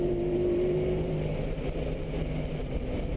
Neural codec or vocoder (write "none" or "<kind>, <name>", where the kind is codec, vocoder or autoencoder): vocoder, BigVGAN v2